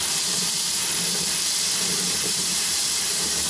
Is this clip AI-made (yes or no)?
yes